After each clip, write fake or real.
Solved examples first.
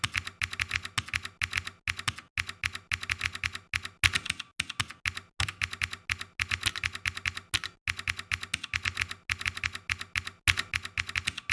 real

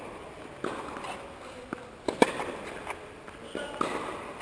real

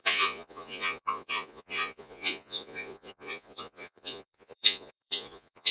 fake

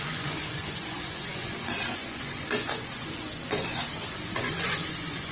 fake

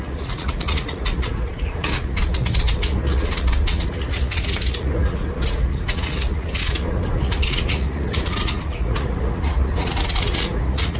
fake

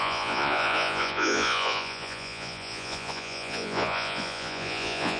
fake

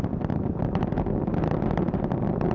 real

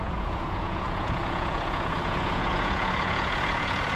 fake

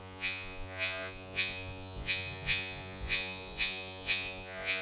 fake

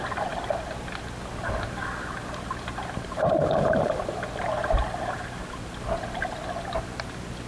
real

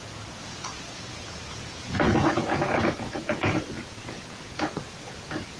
fake